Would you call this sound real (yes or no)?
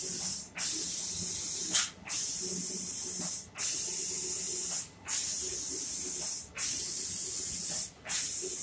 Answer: yes